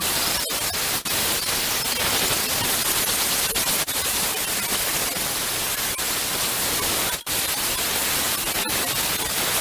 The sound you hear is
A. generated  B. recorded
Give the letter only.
B